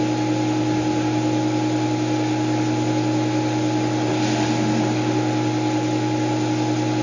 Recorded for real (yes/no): yes